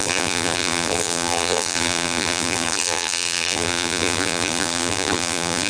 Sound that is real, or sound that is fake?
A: fake